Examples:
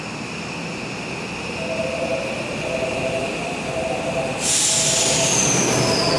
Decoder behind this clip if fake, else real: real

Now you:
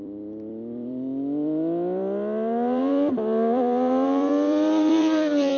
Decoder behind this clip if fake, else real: fake, vocoder, BigVGAN v2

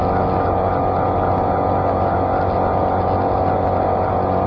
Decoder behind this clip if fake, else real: real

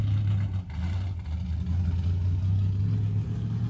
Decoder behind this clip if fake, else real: real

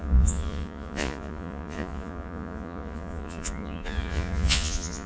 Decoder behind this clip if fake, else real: fake, vocoder, Vocos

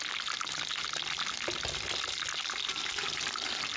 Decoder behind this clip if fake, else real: real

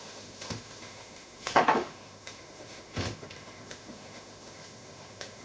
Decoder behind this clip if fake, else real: fake, autoencoder, DAC-VAE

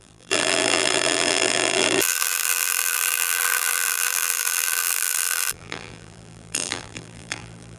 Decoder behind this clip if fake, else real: fake, vocoder, BigVGAN v2